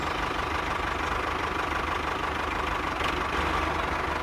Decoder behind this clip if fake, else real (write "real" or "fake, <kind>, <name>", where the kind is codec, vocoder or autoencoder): real